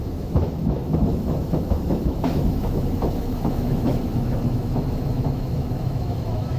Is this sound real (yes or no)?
no